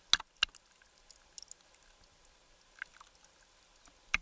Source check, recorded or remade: recorded